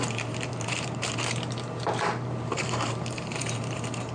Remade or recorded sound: remade